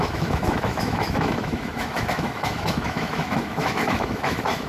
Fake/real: fake